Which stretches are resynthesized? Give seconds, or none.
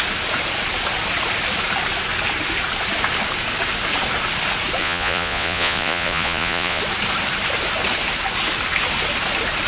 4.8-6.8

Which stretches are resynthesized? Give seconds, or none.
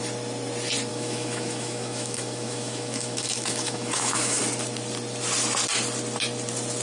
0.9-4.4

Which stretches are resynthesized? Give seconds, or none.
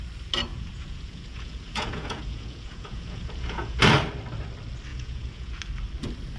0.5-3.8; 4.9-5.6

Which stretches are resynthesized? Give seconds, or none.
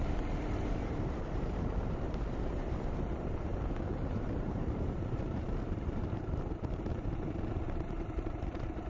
0.0-3.5; 4.1-8.9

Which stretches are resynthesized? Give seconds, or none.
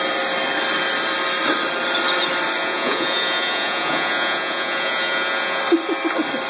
2.6-5.6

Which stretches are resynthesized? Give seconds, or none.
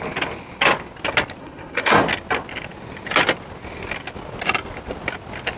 1.4-2.0